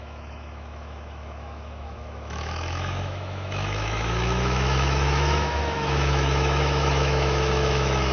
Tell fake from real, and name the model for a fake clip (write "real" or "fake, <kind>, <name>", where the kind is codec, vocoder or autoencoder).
fake, autoencoder, DAC-VAE